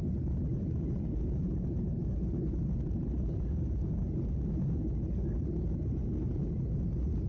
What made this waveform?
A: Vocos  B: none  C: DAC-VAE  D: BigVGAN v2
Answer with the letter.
B